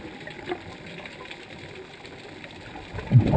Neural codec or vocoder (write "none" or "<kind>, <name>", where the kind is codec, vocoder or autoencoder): none